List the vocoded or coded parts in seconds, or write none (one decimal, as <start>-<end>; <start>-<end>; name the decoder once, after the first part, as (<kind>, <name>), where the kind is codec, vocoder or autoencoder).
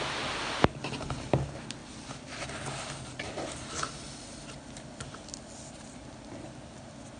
none